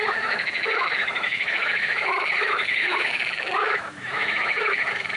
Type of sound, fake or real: fake